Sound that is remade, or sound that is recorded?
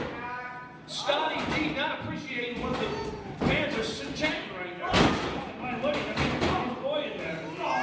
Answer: recorded